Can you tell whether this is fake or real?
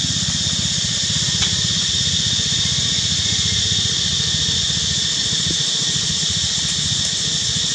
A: real